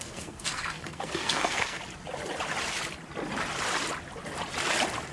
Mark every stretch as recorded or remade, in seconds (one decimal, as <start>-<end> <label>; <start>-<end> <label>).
0.0-1.8 remade; 1.8-5.1 recorded